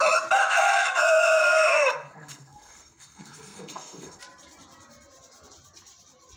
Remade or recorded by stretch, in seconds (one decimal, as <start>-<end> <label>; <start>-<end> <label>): 0.0-0.4 recorded; 0.4-4.2 remade; 4.2-6.4 recorded

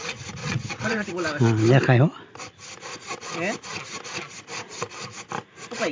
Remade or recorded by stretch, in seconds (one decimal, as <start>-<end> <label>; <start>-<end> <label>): 0.0-0.4 recorded; 0.4-1.1 remade; 1.1-5.9 recorded

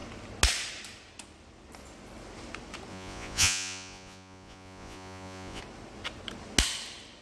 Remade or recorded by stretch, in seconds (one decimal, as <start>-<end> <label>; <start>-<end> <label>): 0.0-2.9 recorded; 2.9-5.6 remade; 5.6-7.2 recorded

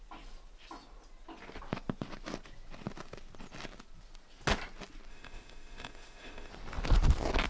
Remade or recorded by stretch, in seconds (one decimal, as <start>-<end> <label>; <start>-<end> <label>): 0.0-5.1 recorded; 5.1-6.5 remade; 6.5-7.5 recorded

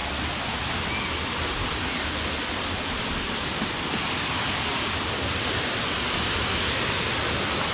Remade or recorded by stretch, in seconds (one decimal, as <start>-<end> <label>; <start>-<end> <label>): 0.0-7.7 recorded

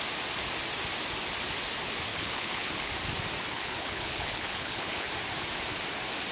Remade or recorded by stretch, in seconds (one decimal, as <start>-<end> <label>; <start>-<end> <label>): 0.0-2.1 recorded; 2.1-2.9 remade; 2.9-3.5 recorded; 3.5-5.1 remade; 5.1-6.3 recorded

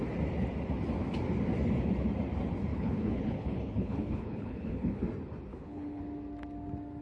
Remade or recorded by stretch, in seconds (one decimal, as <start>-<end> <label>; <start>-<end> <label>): 0.0-2.7 recorded; 2.7-5.0 remade; 5.0-5.5 recorded; 5.5-6.0 remade; 6.0-7.0 recorded